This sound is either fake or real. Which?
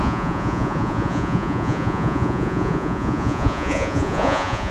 fake